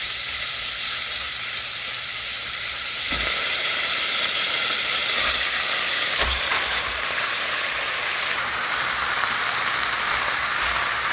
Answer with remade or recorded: remade